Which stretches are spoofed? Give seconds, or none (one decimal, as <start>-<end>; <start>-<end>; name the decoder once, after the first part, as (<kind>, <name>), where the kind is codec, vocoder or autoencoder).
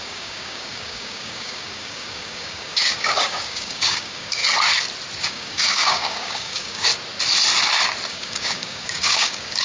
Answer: 0.0-4.4 (codec, DAC); 5.2-6.9; 8.1-9.6